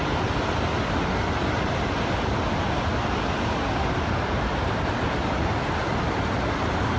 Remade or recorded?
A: recorded